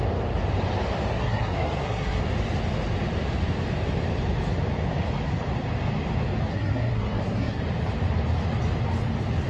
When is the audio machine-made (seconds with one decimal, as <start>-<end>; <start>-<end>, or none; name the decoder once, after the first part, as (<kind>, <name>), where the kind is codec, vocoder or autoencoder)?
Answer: 1.1-2.2 (codec, SNAC); 6.5-7.6